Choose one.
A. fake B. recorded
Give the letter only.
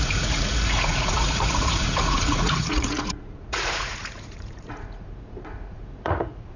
A